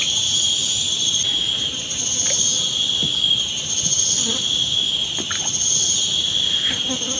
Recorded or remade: recorded